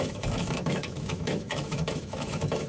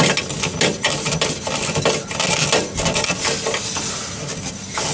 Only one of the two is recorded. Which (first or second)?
second